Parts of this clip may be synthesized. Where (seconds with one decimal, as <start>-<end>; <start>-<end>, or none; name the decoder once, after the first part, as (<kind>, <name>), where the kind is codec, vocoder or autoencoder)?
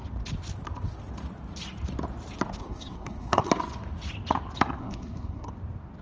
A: 2.6-3.5 (codec, SNAC); 4.8-5.5